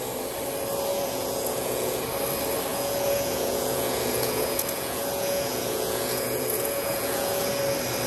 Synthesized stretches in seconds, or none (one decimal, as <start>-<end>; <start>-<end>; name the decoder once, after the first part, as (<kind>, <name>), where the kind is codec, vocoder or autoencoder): 0.9-2.0 (vocoder, Vocos); 2.7-7.6